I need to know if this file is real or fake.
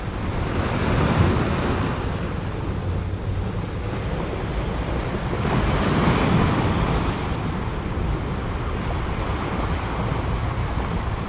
real